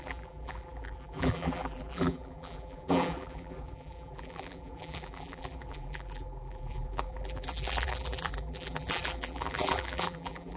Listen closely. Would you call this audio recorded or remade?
remade